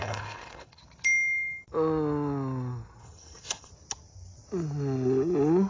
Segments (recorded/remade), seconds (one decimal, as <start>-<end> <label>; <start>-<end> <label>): 0.0-0.8 remade; 0.8-3.0 recorded; 3.0-3.7 remade; 3.7-5.7 recorded

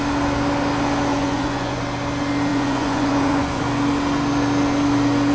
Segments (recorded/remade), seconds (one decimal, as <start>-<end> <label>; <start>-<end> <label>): 0.0-1.1 recorded; 1.1-1.8 remade; 1.8-2.5 recorded; 2.5-3.6 remade; 3.6-5.3 recorded

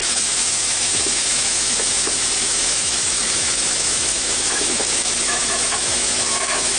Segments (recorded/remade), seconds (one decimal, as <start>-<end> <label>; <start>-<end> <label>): 0.0-6.8 remade